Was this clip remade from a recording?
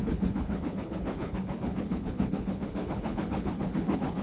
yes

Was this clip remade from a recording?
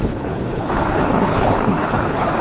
yes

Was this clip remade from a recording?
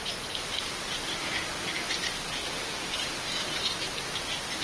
no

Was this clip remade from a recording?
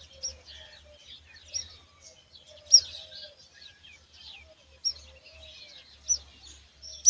no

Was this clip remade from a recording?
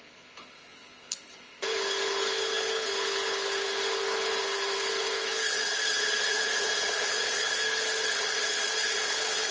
yes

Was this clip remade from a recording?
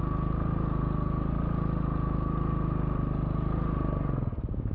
no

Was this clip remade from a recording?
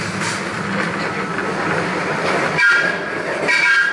no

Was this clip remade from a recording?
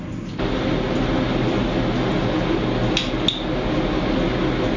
no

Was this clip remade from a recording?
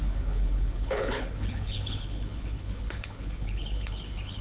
yes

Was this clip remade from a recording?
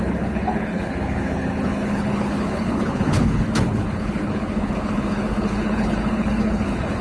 yes